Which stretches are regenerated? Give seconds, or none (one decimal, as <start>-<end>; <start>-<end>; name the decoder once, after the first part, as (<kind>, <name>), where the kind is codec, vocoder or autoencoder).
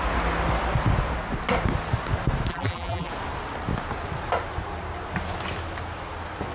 2.5-3.1 (vocoder, BigVGAN v2)